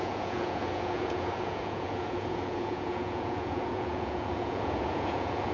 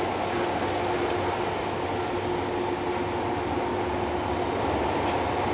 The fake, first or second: first